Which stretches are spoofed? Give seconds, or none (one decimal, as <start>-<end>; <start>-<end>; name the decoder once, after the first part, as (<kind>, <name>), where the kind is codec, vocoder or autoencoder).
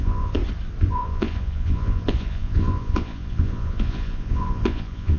0.0-0.4 (vocoder, Vocos); 0.9-5.2